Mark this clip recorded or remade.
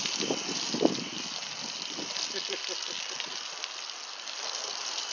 recorded